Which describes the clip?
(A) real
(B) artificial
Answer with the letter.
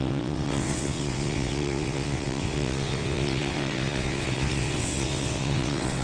B